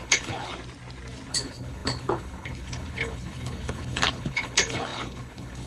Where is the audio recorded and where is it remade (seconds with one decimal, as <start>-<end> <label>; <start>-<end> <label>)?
0.0-0.5 remade; 0.5-1.3 recorded; 1.3-5.7 remade